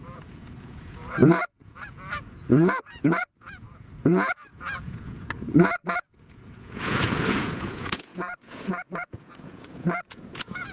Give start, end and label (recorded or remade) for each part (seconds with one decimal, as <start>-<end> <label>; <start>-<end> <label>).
0.0-10.7 remade